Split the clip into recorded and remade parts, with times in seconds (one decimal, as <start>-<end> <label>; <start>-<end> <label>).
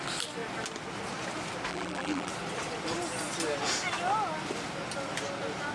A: 0.0-1.7 recorded; 1.7-2.3 remade; 2.3-5.7 recorded